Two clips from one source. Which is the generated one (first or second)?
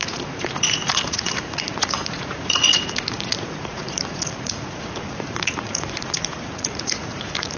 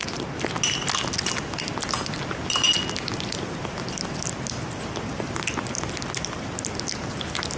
first